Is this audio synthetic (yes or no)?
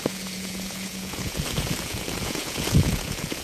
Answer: yes